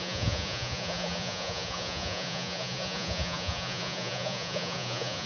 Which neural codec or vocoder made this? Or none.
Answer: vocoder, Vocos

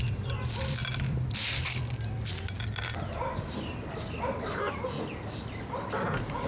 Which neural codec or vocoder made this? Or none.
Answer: none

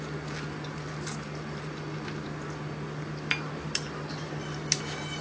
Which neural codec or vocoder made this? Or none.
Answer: none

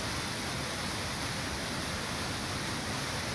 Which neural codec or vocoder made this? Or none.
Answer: none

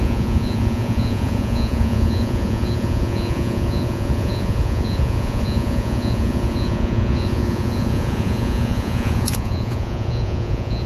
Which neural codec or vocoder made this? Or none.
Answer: vocoder, Vocos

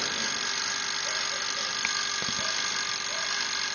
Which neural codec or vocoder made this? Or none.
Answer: none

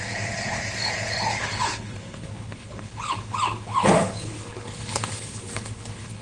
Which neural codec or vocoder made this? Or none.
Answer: codec, HILCodec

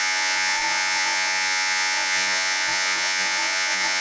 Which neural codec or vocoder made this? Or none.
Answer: vocoder, Vocos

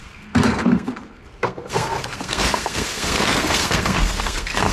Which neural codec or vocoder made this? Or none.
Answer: codec, SNAC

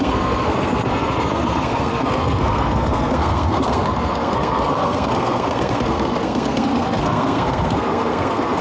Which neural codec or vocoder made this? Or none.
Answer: codec, SNAC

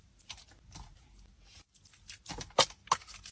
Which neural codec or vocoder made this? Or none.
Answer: none